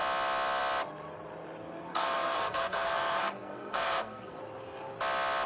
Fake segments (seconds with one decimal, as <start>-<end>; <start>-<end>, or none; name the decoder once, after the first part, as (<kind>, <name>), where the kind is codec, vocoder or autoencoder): 1.9-4.4 (codec, SNAC)